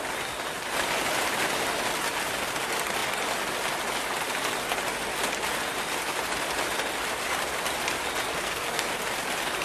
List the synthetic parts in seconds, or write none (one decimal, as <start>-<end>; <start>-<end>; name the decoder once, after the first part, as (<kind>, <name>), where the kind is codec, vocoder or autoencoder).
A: 8.3-8.9 (codec, SNAC)